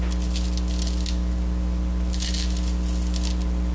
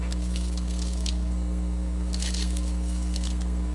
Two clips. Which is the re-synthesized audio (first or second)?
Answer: second